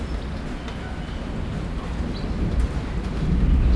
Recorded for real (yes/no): yes